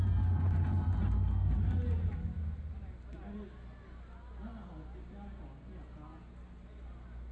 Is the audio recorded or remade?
recorded